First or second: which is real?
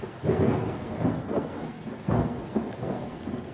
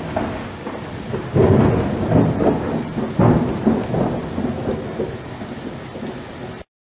second